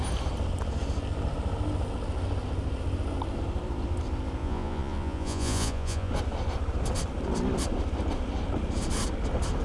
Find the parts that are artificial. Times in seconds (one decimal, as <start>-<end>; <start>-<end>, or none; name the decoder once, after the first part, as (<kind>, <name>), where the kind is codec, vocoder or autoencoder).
4.4-6.1 (vocoder, Vocos)